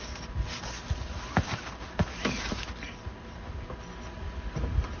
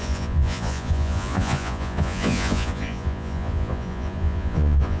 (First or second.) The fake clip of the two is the second